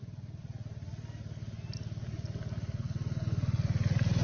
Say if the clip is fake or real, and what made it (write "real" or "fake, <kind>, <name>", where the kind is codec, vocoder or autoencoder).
real